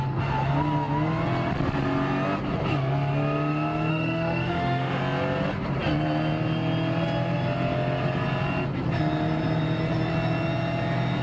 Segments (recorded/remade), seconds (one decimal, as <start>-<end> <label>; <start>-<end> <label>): 0.0-3.9 recorded; 3.9-5.0 remade; 5.0-11.2 recorded